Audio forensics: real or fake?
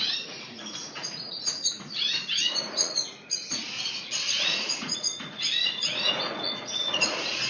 fake